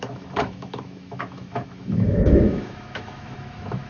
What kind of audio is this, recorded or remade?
remade